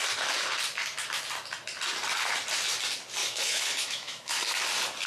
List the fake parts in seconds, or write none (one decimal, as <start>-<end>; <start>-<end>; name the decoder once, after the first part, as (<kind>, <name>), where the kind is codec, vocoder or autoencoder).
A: 3.2-4.4 (autoencoder, DAC-VAE)